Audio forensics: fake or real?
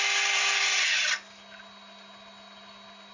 real